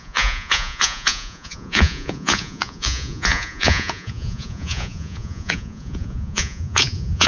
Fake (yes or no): yes